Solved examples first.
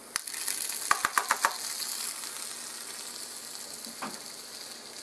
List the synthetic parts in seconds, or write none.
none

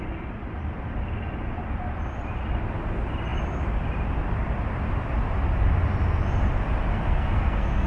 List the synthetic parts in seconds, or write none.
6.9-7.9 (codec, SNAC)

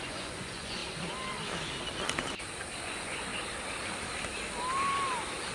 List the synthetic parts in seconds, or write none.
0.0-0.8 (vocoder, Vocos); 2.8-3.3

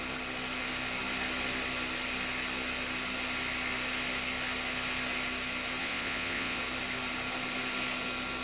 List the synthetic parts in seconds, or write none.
5.8-6.6 (vocoder, Vocos)

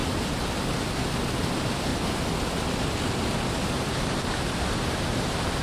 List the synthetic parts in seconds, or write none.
1.5-1.9 (vocoder, BigVGAN v2); 3.7-5.6

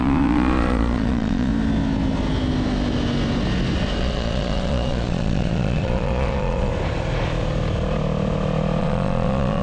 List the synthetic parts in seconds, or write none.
0.0-1.5 (vocoder, Vocos); 4.0-6.7; 8.8-9.6

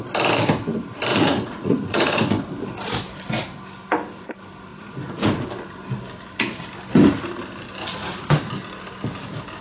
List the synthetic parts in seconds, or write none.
1.1-2.5 (vocoder, Vocos); 4.7-5.5; 7.8-8.3